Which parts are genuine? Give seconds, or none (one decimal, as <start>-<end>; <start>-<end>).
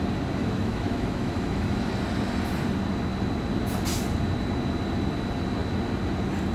0.0-0.4; 1.9-6.5